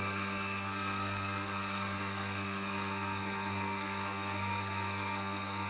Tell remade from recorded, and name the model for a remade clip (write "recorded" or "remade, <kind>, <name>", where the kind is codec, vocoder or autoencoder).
remade, codec, SNAC